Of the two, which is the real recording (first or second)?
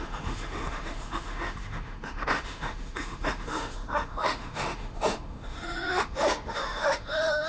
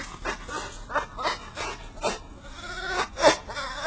second